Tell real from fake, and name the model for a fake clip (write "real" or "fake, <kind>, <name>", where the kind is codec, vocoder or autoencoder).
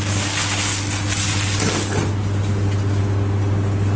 real